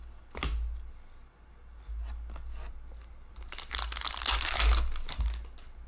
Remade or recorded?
recorded